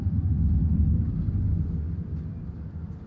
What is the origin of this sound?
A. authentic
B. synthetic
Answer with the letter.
A